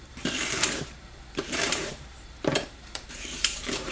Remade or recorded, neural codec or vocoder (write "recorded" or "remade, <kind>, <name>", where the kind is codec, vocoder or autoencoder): remade, vocoder, BigVGAN v2